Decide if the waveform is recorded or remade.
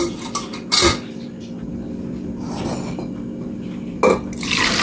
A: recorded